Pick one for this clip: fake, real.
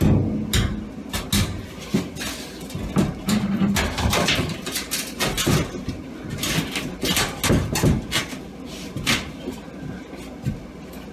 real